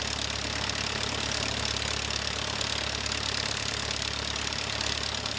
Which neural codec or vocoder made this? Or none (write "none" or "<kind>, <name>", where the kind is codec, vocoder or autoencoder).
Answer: none